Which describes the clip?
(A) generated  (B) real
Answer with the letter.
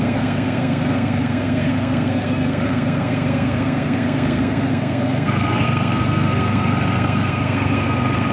A